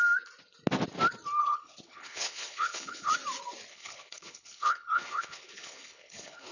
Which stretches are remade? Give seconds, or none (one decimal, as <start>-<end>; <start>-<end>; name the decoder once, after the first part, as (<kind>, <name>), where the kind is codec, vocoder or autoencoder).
1.4-3.1 (codec, HILCodec); 3.7-6.5